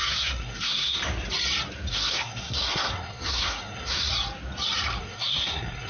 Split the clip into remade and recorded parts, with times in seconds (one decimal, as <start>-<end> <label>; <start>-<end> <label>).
0.0-1.0 remade; 1.0-1.9 recorded; 1.9-4.1 remade; 4.1-5.0 recorded; 5.0-5.9 remade